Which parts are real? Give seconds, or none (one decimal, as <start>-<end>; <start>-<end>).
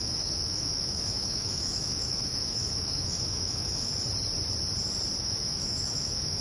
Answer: 3.9-5.2